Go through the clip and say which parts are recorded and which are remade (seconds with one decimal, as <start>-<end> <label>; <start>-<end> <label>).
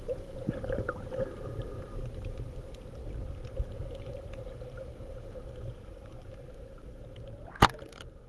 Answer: 0.0-3.0 remade; 3.0-3.5 recorded; 3.5-8.3 remade